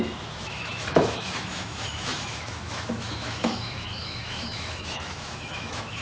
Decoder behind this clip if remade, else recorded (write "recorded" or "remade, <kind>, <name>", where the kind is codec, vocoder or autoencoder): remade, autoencoder, DAC-VAE